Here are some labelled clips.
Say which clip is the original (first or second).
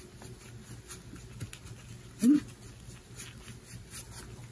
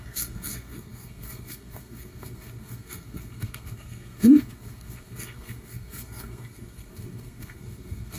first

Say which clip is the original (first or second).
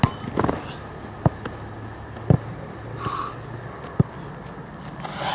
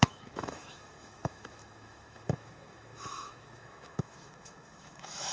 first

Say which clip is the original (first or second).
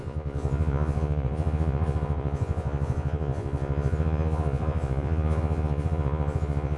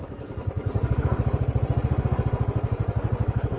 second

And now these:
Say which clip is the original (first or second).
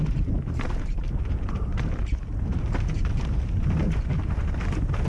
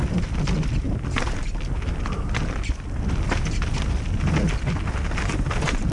second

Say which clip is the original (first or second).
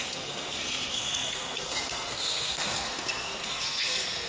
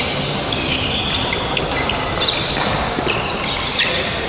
second